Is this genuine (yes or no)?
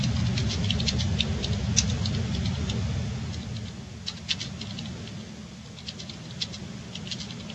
yes